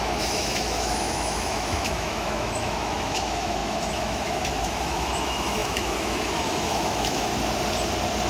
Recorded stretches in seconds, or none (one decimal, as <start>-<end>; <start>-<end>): 7.3-8.3